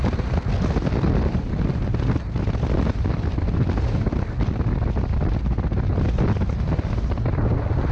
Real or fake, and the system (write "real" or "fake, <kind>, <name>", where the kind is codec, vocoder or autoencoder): real